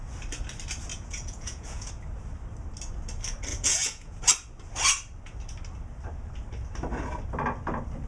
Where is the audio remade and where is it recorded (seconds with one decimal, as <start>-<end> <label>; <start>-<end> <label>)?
0.0-0.9 recorded; 0.9-1.9 remade; 1.9-3.5 recorded; 3.5-4.2 remade; 4.2-8.1 recorded